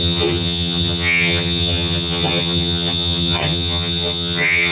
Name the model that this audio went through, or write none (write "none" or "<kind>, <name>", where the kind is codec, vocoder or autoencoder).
vocoder, HiFi-GAN